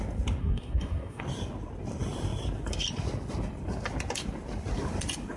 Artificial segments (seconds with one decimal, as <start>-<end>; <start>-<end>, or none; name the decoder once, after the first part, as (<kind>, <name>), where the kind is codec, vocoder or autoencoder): 0.4-1.2 (codec, SNAC)